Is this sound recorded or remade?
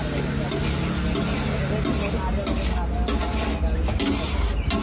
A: recorded